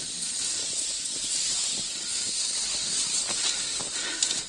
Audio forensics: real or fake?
real